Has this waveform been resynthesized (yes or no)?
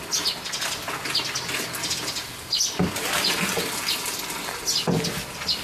no